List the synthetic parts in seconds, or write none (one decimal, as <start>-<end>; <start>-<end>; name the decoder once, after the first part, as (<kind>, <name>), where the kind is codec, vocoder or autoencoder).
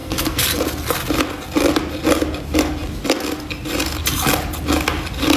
0.0-0.6 (codec, SNAC)